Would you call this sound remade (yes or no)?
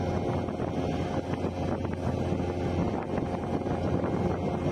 no